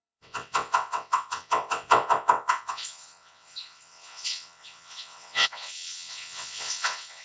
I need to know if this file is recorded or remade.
remade